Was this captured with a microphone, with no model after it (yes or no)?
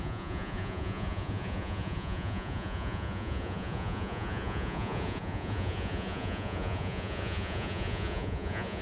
no